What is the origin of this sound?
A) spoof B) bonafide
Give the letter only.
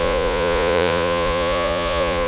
A